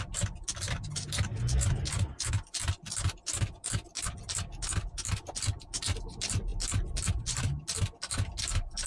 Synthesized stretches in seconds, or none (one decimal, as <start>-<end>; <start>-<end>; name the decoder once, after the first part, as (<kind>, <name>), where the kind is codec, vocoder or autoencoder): none